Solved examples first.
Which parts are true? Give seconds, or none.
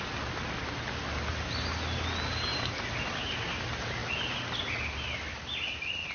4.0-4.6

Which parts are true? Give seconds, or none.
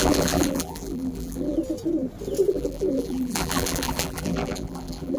1.6-2.5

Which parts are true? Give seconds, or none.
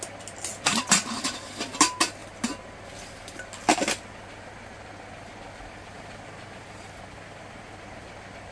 0.0-0.7; 1.5-8.5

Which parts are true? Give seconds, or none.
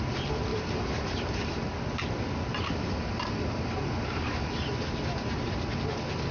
0.0-0.5; 1.7-2.5; 4.7-6.3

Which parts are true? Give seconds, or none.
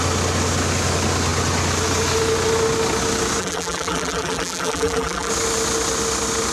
0.0-3.4; 5.3-6.5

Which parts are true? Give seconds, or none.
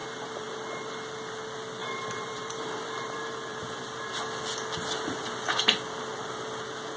0.5-1.8; 4.0-7.0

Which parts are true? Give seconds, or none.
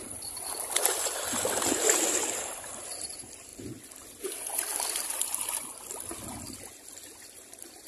none